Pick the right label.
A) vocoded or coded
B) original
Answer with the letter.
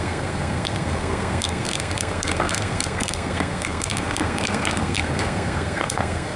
A